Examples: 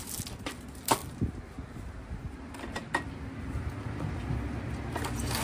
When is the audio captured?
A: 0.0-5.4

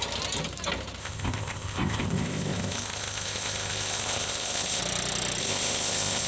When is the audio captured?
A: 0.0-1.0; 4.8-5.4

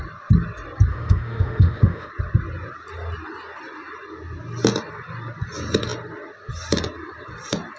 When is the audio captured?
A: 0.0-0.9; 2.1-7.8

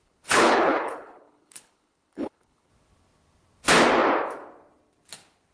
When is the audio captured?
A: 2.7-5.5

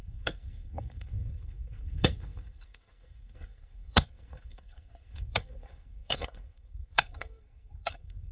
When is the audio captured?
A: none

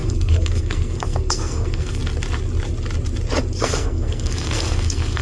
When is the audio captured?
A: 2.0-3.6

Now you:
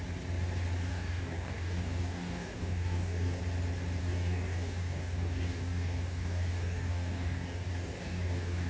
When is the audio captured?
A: 0.0-0.9; 3.4-4.0

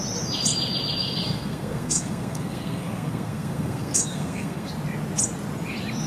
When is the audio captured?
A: 0.0-1.0; 4.7-6.1